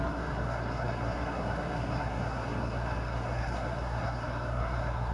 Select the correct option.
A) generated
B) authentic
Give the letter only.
A